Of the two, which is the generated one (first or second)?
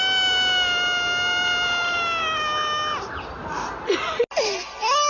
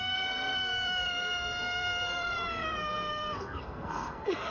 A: second